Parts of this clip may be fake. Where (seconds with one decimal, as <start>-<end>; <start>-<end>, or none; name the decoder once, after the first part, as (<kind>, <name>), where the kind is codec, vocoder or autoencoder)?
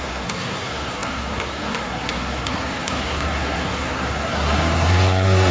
0.0-5.5 (codec, SNAC)